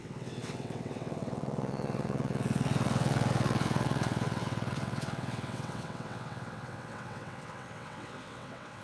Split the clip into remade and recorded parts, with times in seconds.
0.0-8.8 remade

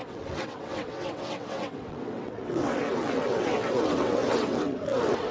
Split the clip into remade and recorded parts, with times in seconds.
0.0-5.3 remade